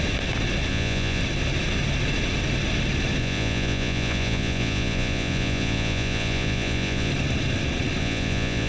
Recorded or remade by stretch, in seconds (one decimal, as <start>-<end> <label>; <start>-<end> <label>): 0.0-0.7 recorded; 0.7-1.2 remade; 1.2-3.2 recorded; 3.2-7.1 remade; 7.1-8.0 recorded; 8.0-8.7 remade